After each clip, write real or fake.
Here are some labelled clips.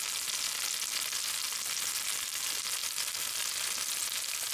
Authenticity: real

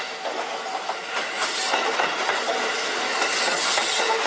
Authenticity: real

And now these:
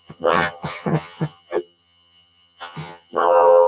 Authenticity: fake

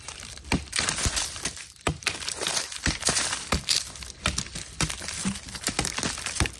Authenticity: fake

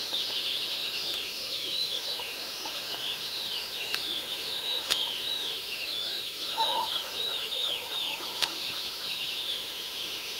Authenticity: fake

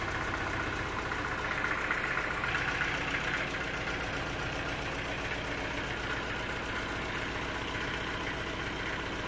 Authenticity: real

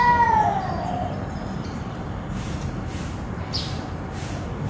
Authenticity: fake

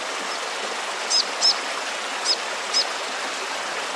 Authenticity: real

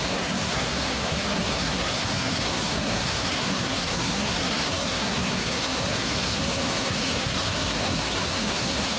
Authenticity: fake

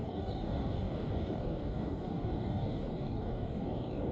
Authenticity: fake